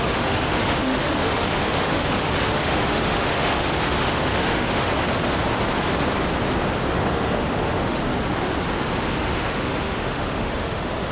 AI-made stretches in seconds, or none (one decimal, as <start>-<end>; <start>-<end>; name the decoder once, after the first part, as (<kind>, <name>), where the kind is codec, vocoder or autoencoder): 0.0-4.9 (autoencoder, DAC-VAE); 6.9-8.0; 9.2-11.1